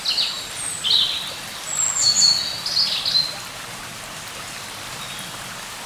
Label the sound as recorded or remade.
recorded